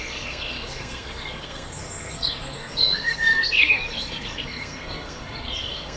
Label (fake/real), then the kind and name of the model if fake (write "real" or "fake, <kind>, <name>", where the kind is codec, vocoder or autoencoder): fake, codec, SNAC